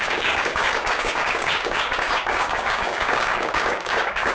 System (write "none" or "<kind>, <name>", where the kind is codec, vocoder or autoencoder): codec, DAC